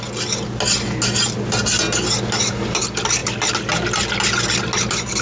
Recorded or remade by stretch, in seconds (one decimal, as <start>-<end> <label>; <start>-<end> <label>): 0.0-5.2 recorded